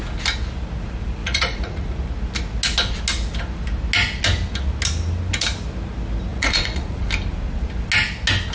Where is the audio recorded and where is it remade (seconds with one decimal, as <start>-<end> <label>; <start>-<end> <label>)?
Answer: 0.0-1.2 recorded; 1.2-1.9 remade; 1.9-6.3 recorded; 6.3-7.1 remade; 7.1-8.5 recorded